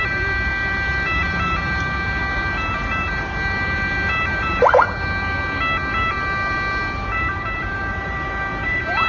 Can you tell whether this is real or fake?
fake